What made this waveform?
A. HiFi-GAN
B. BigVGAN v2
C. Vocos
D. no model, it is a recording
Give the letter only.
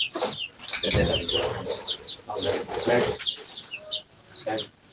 D